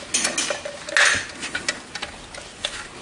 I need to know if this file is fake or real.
real